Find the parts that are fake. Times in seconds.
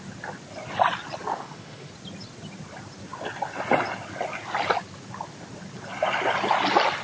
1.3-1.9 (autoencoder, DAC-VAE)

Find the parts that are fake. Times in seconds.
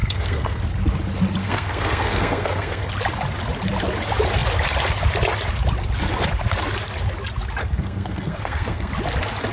0.0-0.6 (codec, SNAC); 1.4-2.9; 7.6-8.9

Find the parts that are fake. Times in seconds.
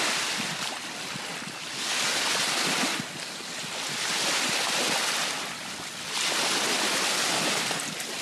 none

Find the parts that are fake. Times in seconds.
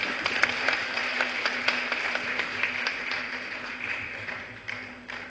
0.0-5.3 (vocoder, BigVGAN v2)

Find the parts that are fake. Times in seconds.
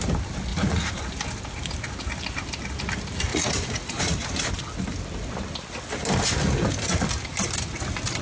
0.5-1.0 (vocoder, Vocos); 3.3-4.3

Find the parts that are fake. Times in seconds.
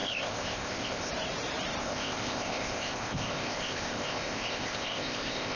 0.0-1.1 (codec, ZipCodec); 1.8-5.6